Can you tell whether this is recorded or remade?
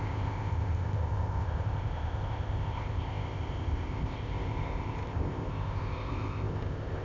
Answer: remade